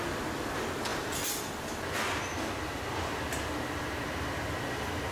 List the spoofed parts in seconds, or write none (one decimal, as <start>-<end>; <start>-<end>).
none